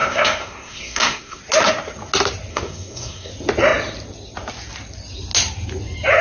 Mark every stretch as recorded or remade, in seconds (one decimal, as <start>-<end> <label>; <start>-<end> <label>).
0.0-1.4 remade; 1.4-2.5 recorded; 2.5-3.3 remade; 3.3-6.2 recorded